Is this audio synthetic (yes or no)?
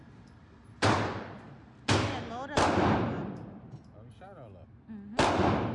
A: no